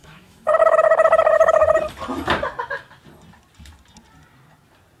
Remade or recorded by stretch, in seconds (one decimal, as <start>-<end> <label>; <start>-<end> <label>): 0.0-0.5 remade; 0.5-5.0 recorded